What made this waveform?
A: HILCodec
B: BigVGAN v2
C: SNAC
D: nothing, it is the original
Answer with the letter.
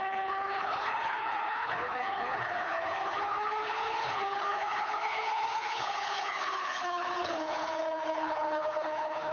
A